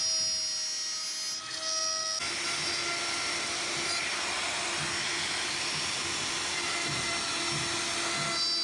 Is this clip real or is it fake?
real